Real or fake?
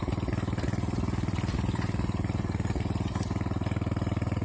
real